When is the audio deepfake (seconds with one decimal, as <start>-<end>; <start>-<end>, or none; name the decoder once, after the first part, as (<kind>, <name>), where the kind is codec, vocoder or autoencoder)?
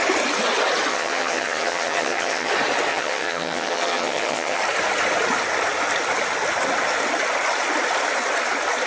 0.9-2.5 (vocoder, HiFi-GAN); 2.9-4.6